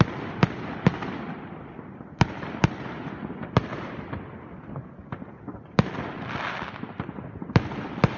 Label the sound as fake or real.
fake